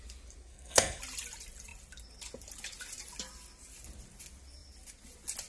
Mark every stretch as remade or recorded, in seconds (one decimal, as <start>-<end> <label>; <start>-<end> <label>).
0.0-0.5 recorded; 0.5-1.0 remade; 1.0-5.5 recorded